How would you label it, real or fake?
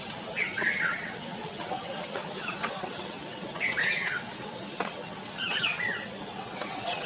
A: fake